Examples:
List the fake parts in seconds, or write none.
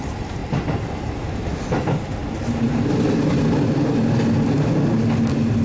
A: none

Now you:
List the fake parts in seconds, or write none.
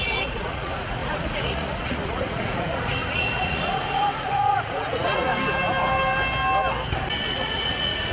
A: 0.0-5.3 (vocoder, Vocos); 7.4-8.1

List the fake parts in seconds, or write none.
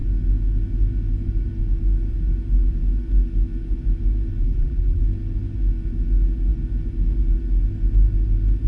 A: 4.4-5.0 (vocoder, BigVGAN v2)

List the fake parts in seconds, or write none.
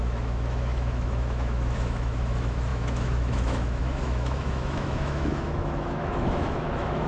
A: 0.0-7.1 (autoencoder, DAC-VAE)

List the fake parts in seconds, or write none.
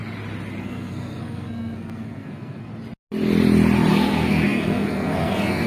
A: 0.6-2.7 (codec, SNAC); 3.9-5.7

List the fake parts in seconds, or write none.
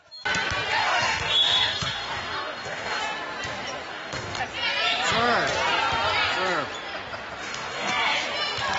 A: 0.8-3.0 (codec, DAC); 3.9-4.4; 7.4-7.9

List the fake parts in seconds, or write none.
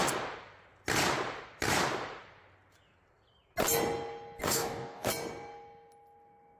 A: 4.4-5.1 (codec, DAC)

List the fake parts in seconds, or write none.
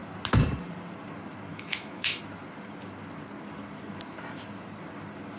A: 1.5-2.2 (autoencoder, DAC-VAE)